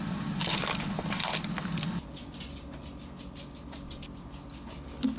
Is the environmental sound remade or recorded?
recorded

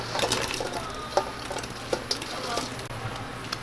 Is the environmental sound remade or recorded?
recorded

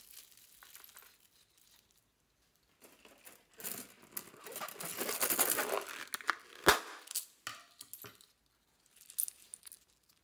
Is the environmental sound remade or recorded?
recorded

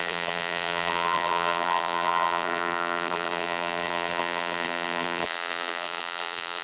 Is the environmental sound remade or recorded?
remade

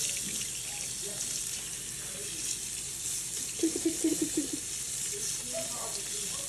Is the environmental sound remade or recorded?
recorded